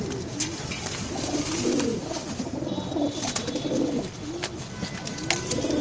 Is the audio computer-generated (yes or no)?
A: no